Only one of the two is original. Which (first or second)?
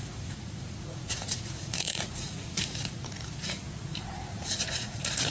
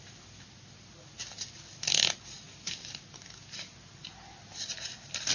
second